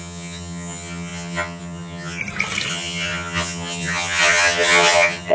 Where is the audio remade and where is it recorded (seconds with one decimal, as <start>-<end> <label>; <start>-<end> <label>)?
0.0-2.2 remade; 2.2-2.7 recorded; 2.7-5.3 remade